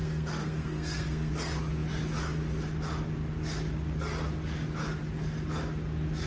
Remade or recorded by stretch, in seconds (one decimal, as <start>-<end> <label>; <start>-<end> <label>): 0.0-1.3 remade; 1.3-6.3 recorded